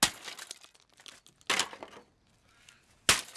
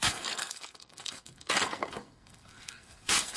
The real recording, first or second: first